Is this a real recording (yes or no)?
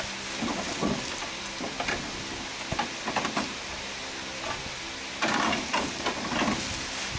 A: yes